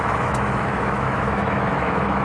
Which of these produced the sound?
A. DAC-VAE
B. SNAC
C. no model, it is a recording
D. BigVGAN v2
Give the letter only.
A